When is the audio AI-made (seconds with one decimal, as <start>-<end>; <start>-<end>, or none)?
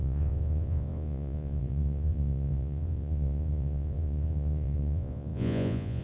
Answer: 0.0-6.0